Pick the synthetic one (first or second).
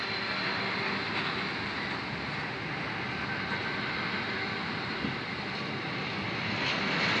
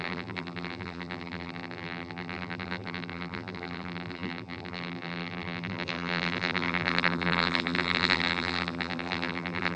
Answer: second